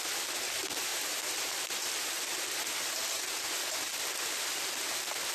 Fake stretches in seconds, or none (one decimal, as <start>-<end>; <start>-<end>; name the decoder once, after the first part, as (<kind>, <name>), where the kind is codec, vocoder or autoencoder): none